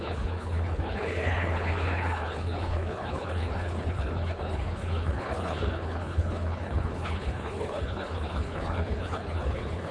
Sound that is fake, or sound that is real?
fake